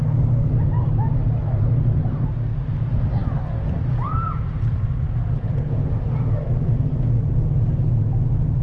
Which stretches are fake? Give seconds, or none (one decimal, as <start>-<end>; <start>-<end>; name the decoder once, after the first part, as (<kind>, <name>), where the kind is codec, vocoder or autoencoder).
3.2-6.0 (vocoder, BigVGAN v2)